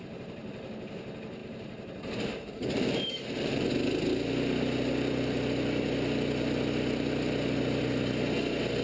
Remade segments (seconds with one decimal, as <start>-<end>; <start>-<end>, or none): 1.4-3.7